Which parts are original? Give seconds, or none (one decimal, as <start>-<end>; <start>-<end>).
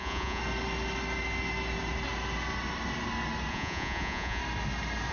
0.4-3.5; 4.4-5.1